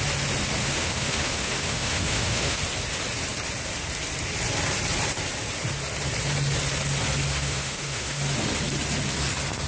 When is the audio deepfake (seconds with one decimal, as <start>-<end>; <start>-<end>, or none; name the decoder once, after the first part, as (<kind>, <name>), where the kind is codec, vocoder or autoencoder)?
0.6-2.6 (autoencoder, DAC-VAE); 7.3-8.2